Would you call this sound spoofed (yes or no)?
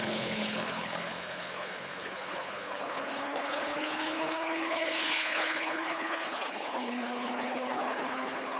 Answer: yes